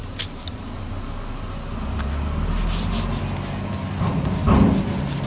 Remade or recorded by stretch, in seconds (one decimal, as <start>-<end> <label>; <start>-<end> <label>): 0.0-5.3 recorded